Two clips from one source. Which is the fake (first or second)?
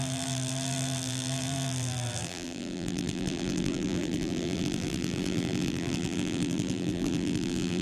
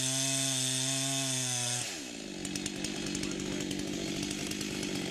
first